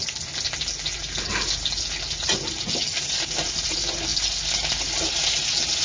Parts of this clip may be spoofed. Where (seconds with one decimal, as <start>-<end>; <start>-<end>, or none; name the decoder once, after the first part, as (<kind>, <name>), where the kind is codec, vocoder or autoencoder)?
none